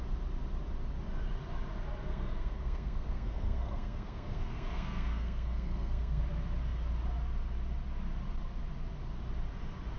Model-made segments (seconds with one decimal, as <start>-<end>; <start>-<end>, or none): 2.1-6.2